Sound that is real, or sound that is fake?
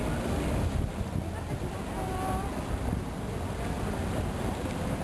real